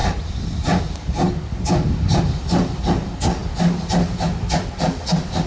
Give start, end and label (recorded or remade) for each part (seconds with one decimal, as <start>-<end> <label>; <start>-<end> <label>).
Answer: 0.0-5.5 recorded